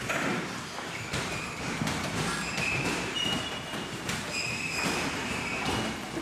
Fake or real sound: real